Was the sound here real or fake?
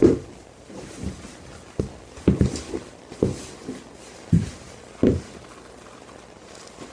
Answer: real